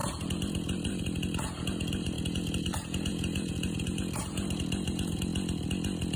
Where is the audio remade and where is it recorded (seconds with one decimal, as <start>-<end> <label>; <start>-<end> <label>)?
0.0-5.3 remade; 5.3-6.2 recorded